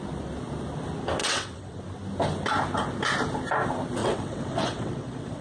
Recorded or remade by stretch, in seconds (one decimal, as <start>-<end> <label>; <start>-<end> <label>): 0.0-1.2 recorded; 1.2-1.8 remade; 1.8-4.0 recorded; 4.0-5.4 remade